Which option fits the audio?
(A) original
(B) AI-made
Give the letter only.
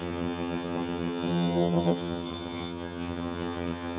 B